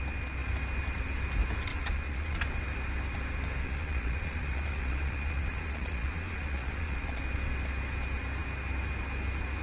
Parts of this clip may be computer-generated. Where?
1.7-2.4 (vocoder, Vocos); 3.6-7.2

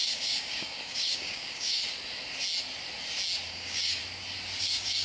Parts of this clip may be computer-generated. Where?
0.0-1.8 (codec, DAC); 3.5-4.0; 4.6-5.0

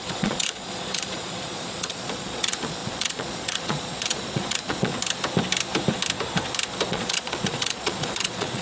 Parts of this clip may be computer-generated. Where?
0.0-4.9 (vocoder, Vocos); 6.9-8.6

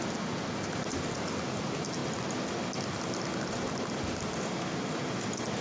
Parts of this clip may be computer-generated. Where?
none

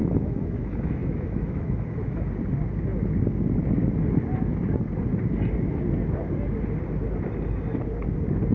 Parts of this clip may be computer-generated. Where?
0.0-2.2 (autoencoder, DAC-VAE)

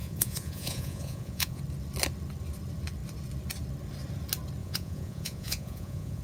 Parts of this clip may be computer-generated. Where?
0.0-1.6 (vocoder, Vocos); 4.6-6.2

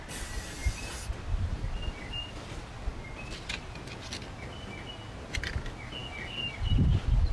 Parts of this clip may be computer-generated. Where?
none

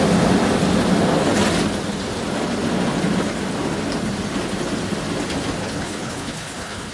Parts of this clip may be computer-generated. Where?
5.6-6.9 (codec, HILCodec)